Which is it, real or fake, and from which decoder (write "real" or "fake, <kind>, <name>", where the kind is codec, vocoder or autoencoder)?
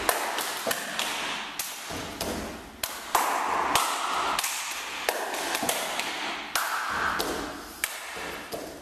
real